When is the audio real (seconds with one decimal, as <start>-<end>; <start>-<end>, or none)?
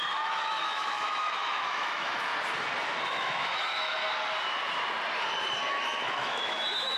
2.3-3.1; 4.0-5.7